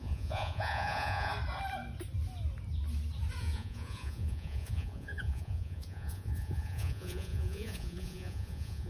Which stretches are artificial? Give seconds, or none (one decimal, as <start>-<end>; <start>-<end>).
0.0-1.3; 3.4-8.9